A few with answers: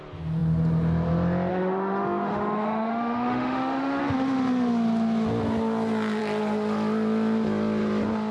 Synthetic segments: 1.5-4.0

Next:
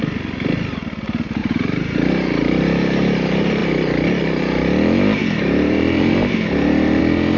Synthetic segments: 1.4-2.6; 5.2-7.0